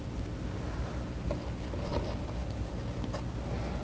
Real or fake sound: real